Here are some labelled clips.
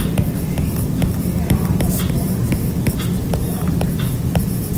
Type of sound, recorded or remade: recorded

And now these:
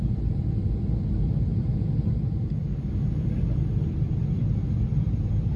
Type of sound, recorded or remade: recorded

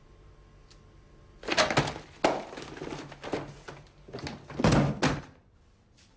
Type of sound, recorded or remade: recorded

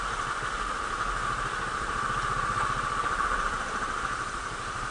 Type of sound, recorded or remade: recorded